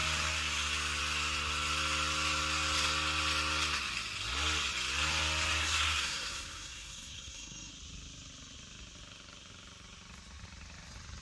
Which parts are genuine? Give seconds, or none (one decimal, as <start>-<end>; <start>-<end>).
0.0-5.6; 7.7-11.2